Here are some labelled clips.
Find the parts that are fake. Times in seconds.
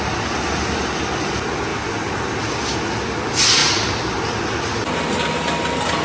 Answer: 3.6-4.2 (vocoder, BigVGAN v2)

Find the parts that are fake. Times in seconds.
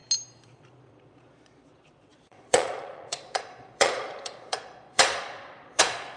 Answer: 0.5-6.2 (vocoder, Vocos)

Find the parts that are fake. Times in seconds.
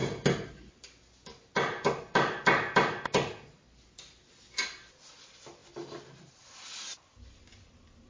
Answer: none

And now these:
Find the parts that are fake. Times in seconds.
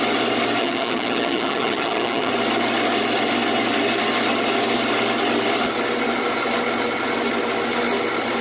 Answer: 0.6-2.3 (vocoder, HiFi-GAN)